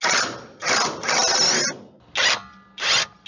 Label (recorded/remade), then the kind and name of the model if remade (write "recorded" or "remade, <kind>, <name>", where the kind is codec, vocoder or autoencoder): recorded